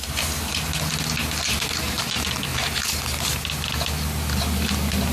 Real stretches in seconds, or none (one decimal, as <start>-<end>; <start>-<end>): 0.0-1.2; 2.0-5.1